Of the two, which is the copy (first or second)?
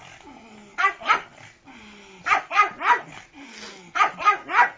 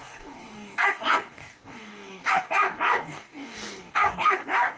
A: second